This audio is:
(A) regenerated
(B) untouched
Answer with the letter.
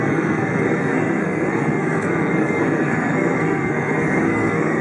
A